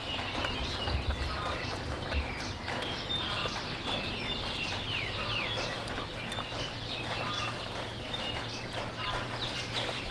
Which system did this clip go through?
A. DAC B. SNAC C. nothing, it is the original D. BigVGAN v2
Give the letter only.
C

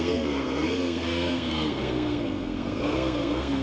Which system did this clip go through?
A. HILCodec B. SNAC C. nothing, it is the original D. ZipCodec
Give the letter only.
B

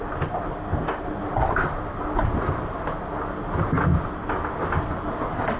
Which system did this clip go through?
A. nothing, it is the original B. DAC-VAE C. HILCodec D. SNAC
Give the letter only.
A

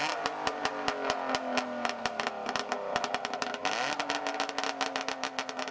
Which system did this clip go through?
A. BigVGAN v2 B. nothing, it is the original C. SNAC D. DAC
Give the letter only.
B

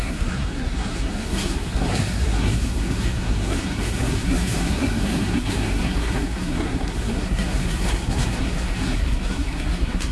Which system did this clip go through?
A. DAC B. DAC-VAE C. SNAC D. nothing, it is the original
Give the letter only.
C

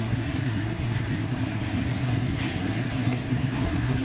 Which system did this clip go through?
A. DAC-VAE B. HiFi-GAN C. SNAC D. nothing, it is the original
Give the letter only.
C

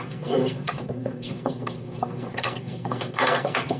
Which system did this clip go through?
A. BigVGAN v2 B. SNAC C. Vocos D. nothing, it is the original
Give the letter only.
B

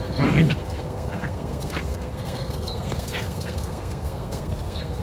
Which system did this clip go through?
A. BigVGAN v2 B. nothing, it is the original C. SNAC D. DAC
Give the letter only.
C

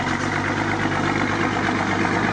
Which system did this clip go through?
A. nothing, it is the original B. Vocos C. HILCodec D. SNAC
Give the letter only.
A